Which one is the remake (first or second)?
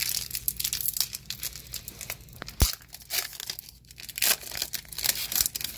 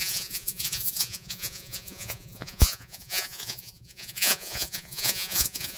second